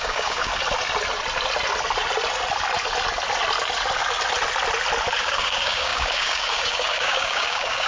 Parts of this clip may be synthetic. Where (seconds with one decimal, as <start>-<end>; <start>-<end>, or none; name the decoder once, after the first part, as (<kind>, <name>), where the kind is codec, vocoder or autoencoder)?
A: 0.0-0.5 (codec, DAC); 5.2-7.9